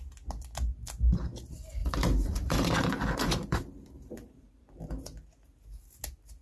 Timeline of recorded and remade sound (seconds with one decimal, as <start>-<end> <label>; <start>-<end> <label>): 0.0-1.8 recorded; 1.8-4.8 remade; 4.8-6.4 recorded